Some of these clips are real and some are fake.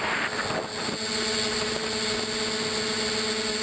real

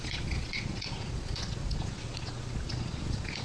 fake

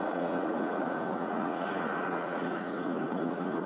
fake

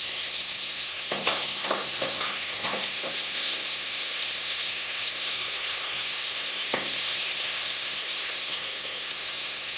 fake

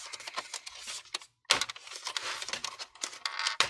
real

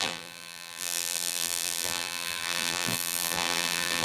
fake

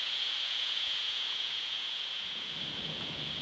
fake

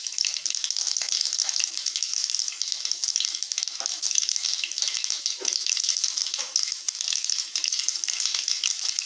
fake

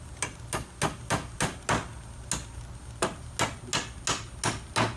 real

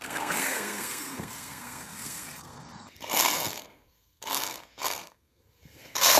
fake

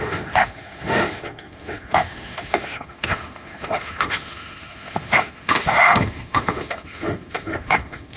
fake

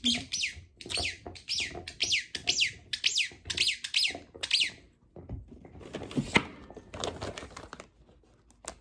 real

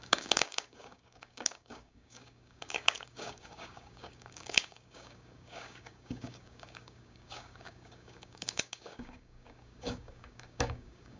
fake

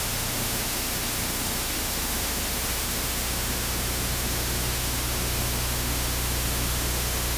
fake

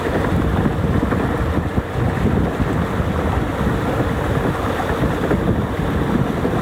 real